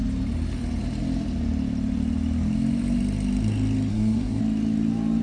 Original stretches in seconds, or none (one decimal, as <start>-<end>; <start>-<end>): 0.0-3.9; 4.4-5.2